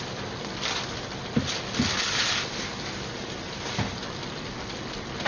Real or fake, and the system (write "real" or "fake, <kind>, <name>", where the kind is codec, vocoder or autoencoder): real